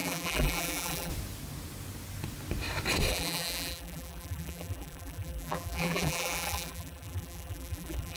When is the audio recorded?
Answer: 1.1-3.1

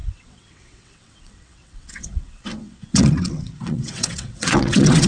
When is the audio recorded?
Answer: none

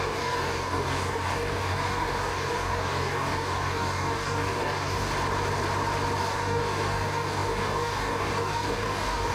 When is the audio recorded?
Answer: 5.1-6.2

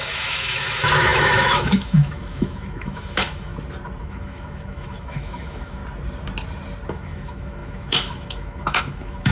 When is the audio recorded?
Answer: 3.5-4.0; 5.8-6.9

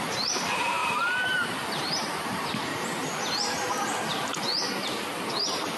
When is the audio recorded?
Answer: 0.0-0.8; 4.3-5.8

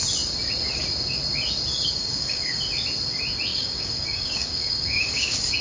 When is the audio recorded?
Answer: 0.0-1.7; 2.6-3.5

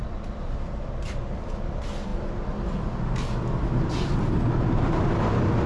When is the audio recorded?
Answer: 1.2-5.7

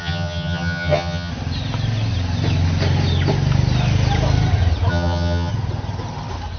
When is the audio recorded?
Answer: 1.3-4.9; 5.5-6.6